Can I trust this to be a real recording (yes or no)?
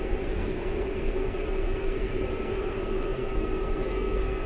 no